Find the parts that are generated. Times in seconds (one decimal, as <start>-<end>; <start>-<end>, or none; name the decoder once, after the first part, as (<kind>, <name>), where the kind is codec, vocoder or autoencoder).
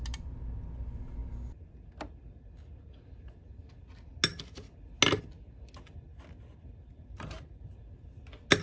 6.9-7.8 (vocoder, BigVGAN v2)